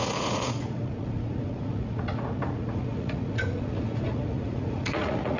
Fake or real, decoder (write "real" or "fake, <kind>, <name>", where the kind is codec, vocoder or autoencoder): fake, vocoder, Vocos